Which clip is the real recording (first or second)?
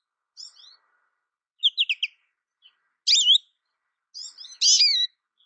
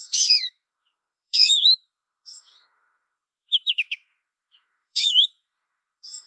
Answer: first